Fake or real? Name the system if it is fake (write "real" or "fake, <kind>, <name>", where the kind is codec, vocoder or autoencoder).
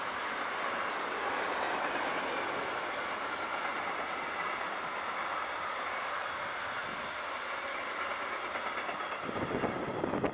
real